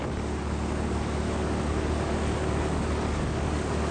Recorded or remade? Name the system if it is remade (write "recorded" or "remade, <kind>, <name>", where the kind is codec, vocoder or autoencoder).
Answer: remade, codec, DAC